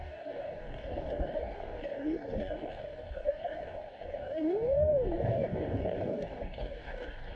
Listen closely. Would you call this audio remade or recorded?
remade